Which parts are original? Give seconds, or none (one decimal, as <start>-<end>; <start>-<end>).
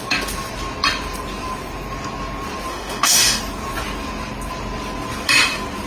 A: 0.0-2.7; 3.4-5.9